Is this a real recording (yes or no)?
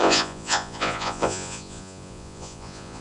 no